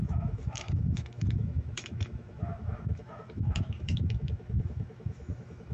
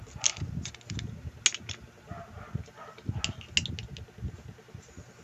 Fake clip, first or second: first